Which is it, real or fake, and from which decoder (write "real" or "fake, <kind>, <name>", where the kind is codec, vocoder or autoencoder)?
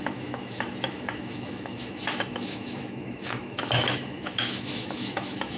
fake, autoencoder, DAC-VAE